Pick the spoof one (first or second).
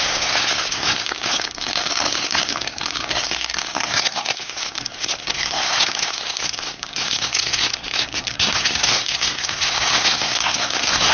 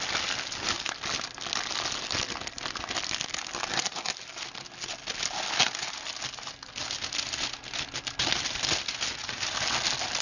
first